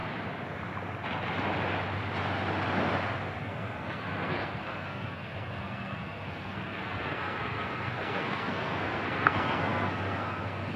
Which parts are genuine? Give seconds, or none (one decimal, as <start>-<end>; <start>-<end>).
0.0-3.4